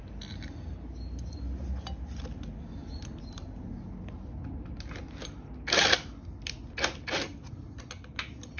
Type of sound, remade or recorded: recorded